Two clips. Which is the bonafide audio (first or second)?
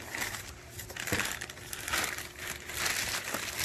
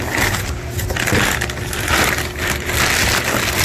second